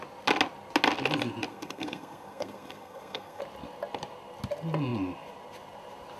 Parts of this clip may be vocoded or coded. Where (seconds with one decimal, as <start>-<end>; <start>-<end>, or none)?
1.5-3.4